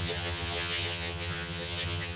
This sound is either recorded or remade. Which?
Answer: remade